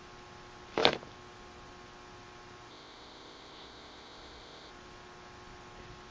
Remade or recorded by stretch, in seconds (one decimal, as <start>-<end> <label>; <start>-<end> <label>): 0.0-2.7 recorded; 2.7-4.7 remade; 4.7-6.1 recorded